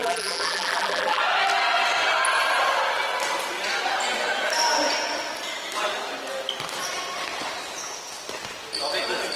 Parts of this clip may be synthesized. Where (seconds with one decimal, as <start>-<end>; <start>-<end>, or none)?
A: 0.0-1.2